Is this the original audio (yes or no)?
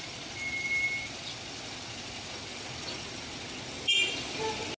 yes